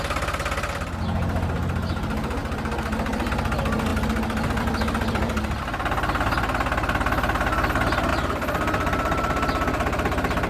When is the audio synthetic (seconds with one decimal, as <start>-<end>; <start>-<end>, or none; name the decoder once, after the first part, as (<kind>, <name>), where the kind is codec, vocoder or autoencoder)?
2.4-3.3 (vocoder, BigVGAN v2); 8.1-10.5